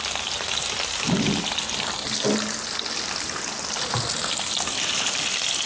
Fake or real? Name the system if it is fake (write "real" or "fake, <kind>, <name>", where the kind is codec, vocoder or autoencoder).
real